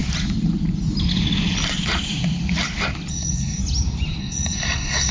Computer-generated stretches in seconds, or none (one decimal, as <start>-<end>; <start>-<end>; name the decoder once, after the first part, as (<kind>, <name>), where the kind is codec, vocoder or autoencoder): 3.1-3.6 (codec, DAC); 4.2-5.1